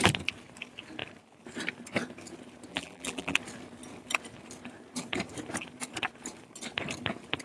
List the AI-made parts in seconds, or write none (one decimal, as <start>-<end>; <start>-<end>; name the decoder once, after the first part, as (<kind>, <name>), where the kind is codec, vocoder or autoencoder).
2.7-3.4 (vocoder, BigVGAN v2)